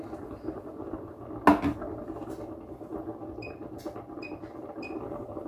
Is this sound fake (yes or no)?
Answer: no